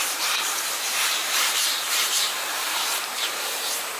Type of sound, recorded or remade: remade